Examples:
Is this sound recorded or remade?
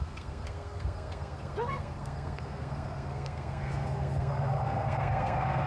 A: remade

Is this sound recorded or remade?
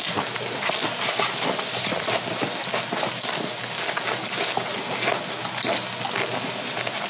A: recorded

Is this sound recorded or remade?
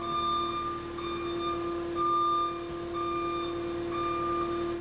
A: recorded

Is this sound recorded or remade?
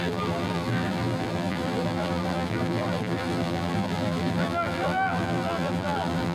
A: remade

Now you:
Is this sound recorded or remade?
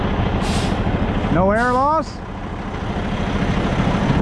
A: recorded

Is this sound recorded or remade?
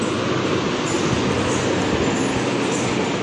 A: recorded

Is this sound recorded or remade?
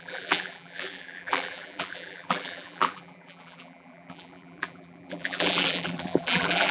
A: remade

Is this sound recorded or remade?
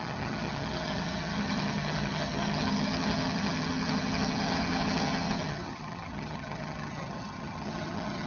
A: remade